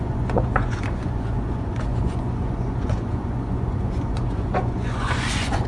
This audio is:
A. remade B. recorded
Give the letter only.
A